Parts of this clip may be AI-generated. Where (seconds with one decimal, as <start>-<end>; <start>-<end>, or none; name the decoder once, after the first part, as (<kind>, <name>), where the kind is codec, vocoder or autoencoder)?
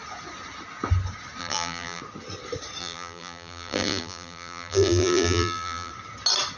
1.4-2.0 (vocoder, BigVGAN v2); 2.8-5.9